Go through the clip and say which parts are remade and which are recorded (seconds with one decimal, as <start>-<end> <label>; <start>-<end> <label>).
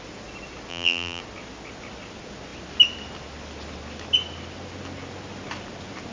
0.0-0.7 recorded; 0.7-1.2 remade; 1.2-6.1 recorded